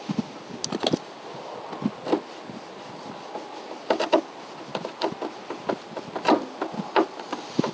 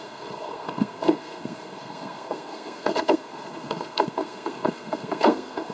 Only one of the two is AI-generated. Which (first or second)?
second